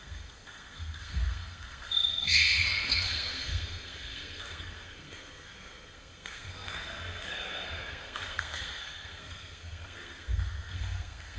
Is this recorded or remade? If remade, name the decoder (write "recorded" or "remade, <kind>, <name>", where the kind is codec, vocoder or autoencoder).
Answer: remade, codec, SNAC